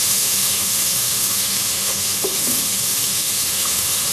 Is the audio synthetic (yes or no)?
yes